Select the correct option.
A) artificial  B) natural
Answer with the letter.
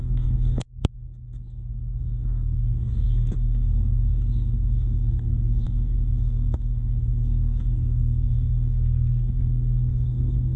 A